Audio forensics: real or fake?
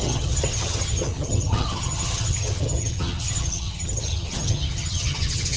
fake